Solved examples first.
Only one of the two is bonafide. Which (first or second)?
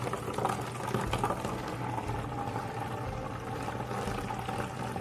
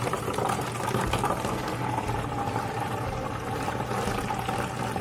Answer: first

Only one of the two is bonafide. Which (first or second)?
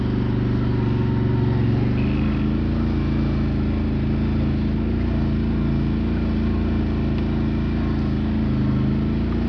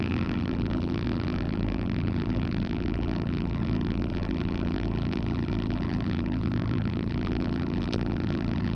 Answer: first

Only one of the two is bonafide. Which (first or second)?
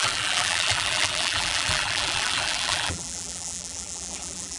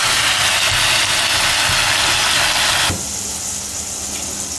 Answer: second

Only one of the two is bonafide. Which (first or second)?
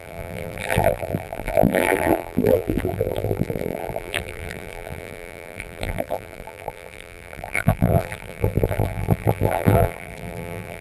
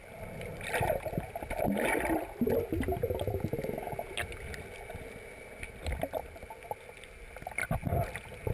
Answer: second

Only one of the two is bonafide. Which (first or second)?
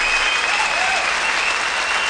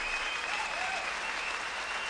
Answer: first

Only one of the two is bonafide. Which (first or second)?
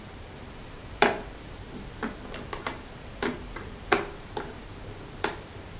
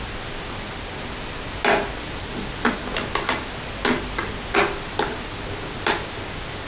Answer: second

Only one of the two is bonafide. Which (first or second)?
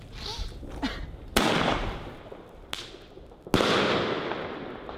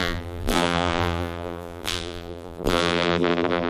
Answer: first